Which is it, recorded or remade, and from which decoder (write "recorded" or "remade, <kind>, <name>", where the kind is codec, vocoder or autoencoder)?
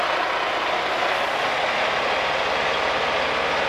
recorded